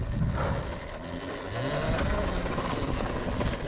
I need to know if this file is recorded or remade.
recorded